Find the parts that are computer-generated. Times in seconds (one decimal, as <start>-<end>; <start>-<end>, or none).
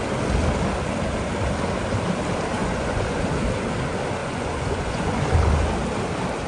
2.6-3.2; 4.2-5.7